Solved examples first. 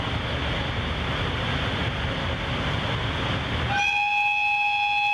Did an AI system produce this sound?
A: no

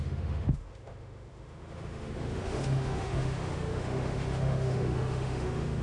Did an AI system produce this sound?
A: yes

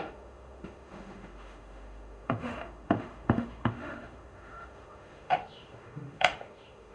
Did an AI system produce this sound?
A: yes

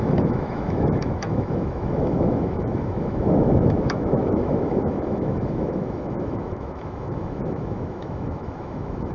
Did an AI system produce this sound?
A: yes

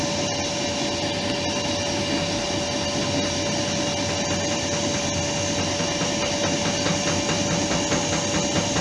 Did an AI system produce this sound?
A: no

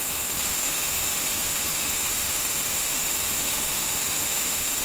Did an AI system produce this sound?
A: yes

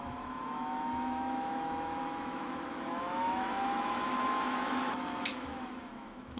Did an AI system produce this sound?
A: yes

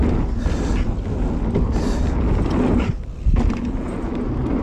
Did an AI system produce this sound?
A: no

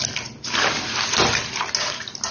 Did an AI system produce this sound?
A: no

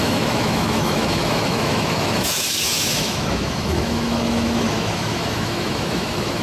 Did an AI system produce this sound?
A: yes